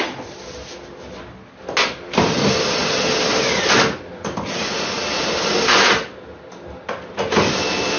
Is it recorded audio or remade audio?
recorded